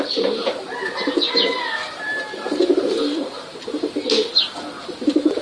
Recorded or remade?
remade